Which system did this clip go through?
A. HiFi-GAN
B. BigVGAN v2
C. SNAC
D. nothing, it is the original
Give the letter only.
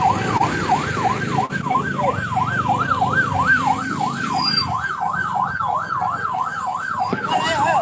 D